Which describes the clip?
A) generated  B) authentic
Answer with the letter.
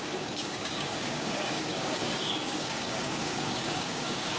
A